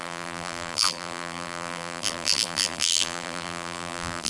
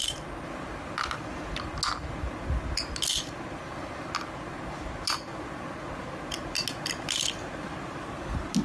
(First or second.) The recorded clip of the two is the second